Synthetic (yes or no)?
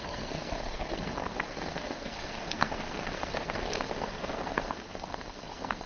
yes